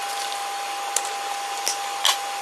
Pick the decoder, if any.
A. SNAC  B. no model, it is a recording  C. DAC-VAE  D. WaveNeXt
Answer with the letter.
B